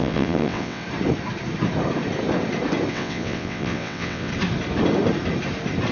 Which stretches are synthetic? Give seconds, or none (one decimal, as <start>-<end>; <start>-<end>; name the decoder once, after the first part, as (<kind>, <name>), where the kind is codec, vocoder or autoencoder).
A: 0.0-0.8 (vocoder, WaveNeXt); 2.9-4.3